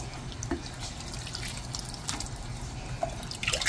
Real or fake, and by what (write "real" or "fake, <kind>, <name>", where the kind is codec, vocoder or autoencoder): real